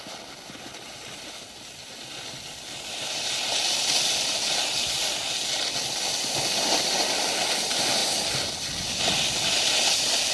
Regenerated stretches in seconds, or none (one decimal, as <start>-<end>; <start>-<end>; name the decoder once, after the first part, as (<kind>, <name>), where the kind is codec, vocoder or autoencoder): none